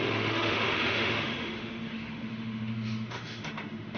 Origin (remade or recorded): remade